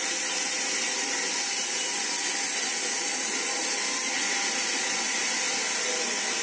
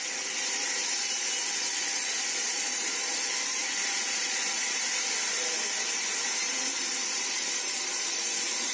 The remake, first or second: second